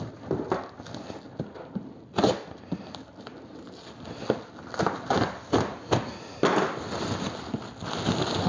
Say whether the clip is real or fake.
real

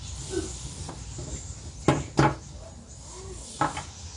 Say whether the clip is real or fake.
real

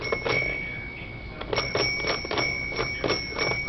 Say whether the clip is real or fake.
real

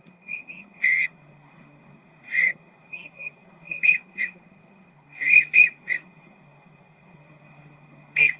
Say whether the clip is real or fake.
fake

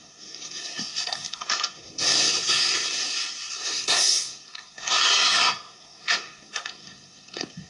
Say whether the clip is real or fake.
fake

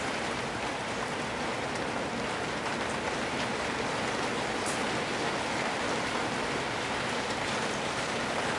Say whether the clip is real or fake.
real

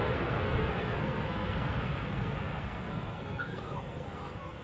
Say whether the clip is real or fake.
fake